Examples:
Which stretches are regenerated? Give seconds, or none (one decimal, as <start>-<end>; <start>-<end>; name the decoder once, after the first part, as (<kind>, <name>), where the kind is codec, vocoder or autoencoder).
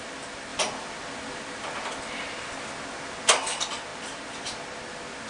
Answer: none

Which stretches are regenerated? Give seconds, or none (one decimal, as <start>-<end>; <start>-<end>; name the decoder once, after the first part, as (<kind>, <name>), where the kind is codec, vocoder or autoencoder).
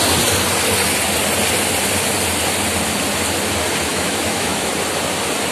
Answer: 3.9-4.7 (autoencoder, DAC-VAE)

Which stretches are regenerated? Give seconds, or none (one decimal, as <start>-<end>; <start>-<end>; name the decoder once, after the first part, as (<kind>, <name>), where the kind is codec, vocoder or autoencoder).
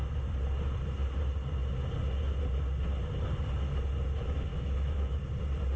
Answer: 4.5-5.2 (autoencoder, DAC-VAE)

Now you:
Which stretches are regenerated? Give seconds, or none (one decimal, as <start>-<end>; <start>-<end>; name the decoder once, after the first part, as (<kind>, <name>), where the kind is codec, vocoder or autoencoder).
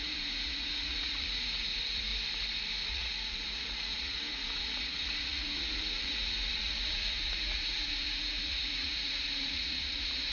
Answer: 0.0-2.1 (vocoder, Vocos); 2.9-10.3